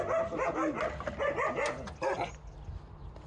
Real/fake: real